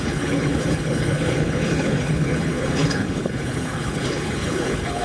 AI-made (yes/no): yes